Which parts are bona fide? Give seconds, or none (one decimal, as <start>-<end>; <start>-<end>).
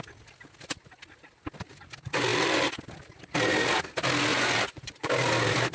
0.0-4.3; 5.1-5.7